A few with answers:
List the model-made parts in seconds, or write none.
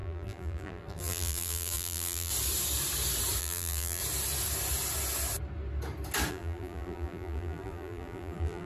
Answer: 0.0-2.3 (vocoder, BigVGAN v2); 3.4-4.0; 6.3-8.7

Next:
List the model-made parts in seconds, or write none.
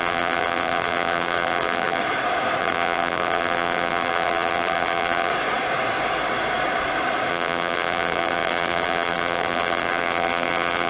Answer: 0.0-2.0 (vocoder, BigVGAN v2); 2.6-5.3; 7.3-10.9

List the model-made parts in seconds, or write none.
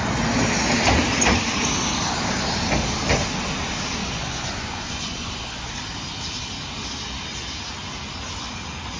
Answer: 4.0-5.7 (vocoder, Vocos)